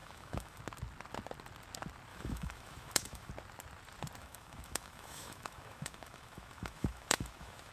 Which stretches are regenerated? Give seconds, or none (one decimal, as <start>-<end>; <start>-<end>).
0.0-0.6; 2.1-3.3; 4.2-7.7